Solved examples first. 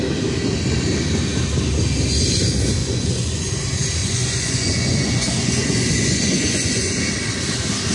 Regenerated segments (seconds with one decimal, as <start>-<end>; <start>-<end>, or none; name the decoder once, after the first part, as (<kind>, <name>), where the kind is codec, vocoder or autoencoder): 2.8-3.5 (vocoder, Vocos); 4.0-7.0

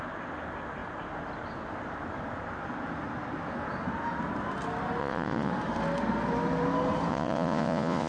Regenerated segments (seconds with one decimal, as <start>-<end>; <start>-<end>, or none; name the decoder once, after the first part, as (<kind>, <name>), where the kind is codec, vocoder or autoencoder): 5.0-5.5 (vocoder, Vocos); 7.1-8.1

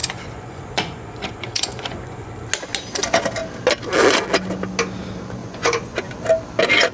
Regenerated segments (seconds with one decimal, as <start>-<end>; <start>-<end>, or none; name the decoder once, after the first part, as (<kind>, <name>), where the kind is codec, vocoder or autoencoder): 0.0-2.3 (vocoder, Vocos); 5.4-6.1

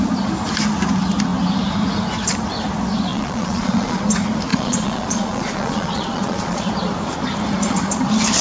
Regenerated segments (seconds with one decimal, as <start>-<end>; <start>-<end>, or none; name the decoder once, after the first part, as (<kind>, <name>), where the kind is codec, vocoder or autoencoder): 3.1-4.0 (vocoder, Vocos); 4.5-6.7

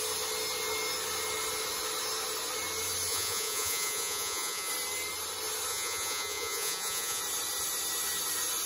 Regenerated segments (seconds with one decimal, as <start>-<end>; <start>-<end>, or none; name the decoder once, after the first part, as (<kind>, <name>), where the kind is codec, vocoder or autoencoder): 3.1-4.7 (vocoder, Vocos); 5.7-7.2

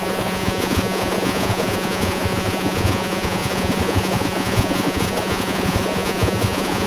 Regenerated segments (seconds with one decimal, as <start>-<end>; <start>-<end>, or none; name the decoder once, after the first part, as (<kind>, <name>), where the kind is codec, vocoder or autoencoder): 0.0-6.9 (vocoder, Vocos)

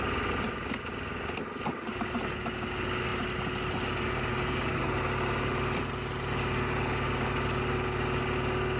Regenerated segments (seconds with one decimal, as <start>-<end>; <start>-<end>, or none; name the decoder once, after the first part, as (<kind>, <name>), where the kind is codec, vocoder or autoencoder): none

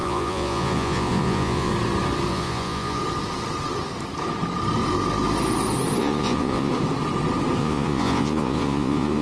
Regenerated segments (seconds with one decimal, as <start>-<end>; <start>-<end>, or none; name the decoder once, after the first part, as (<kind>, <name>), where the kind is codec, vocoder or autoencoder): 0.0-1.7 (vocoder, Vocos); 2.3-3.0; 6.0-6.7; 7.6-9.2